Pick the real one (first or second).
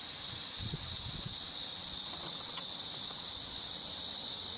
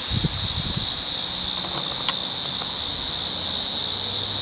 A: second